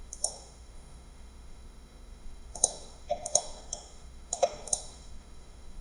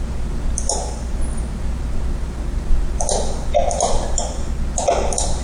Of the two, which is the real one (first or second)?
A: second